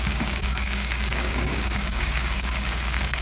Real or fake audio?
fake